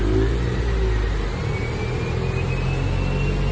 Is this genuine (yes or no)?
yes